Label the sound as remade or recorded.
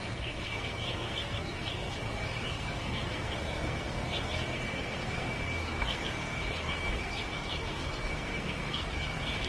remade